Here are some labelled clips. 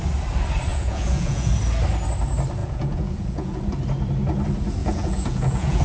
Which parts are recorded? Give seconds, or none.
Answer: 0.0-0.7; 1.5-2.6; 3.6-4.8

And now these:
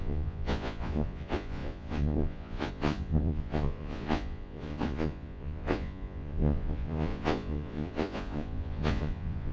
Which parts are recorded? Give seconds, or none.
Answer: none

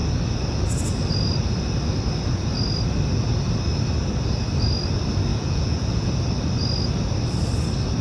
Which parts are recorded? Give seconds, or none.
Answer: 0.0-5.3; 6.1-8.0

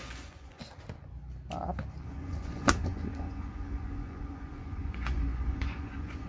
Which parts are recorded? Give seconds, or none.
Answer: 0.6-2.0